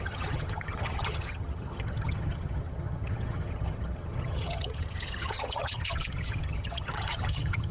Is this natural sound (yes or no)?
no